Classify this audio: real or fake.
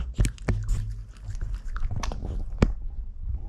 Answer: real